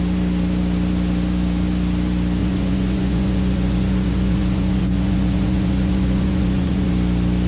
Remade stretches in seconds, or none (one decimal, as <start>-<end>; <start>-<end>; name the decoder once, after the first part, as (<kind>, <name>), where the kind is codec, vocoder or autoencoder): 2.4-6.9 (vocoder, Vocos)